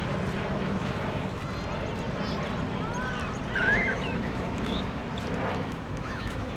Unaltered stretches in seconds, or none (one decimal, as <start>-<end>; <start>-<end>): 0.0-0.5; 1.4-3.6; 5.0-5.5

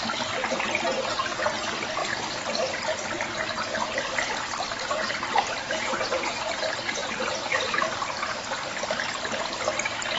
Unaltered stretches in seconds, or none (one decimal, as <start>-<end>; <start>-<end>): 0.0-10.2

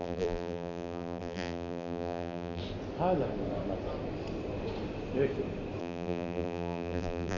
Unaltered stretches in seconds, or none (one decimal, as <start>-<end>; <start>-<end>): 2.6-5.8